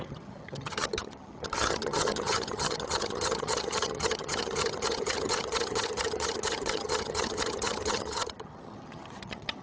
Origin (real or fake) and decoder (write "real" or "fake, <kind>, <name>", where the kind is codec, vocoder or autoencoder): fake, vocoder, HiFi-GAN